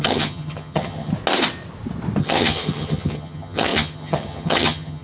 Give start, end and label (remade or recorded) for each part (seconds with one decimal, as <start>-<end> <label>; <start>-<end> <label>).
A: 0.0-1.1 remade; 1.1-2.2 recorded; 2.2-5.0 remade